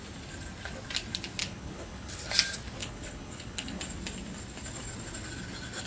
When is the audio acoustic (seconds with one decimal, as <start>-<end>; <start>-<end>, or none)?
0.0-1.4; 2.3-2.8; 3.8-5.9